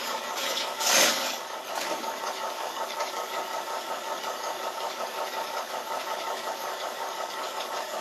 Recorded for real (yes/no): no